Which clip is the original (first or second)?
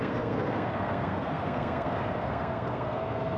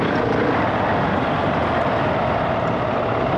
second